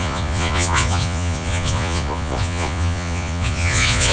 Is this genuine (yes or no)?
no